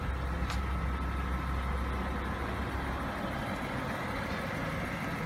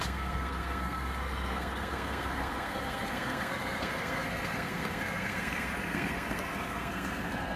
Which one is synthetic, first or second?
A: second